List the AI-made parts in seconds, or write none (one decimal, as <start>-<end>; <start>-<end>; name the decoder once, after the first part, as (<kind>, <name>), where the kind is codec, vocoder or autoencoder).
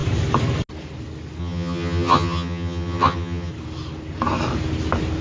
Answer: 1.4-3.5 (vocoder, HiFi-GAN)